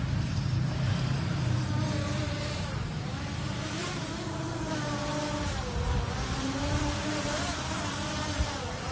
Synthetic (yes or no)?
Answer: yes